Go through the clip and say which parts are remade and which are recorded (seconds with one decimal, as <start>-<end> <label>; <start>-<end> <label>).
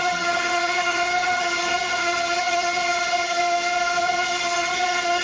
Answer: 0.0-3.4 remade; 3.4-4.0 recorded; 4.0-5.2 remade